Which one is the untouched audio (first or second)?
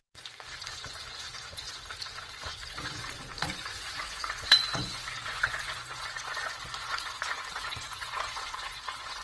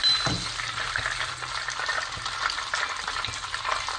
second